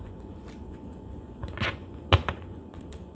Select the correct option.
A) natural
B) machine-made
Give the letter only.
B